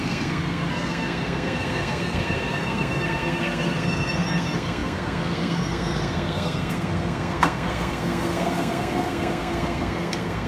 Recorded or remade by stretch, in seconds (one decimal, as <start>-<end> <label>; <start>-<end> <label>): 0.0-10.5 remade

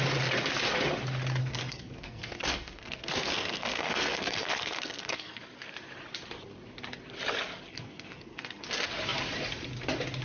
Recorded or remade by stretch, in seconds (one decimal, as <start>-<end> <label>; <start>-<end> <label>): 0.0-1.4 recorded; 1.4-5.4 remade; 5.4-7.7 recorded; 7.7-8.6 remade; 8.6-10.2 recorded

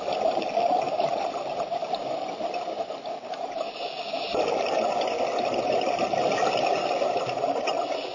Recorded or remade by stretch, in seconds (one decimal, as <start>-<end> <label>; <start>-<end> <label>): 0.0-8.1 recorded